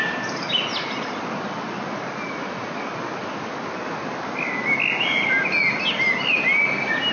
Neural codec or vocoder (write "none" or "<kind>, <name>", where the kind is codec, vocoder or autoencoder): none